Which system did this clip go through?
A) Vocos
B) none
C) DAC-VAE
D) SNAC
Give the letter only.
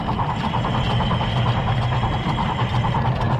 B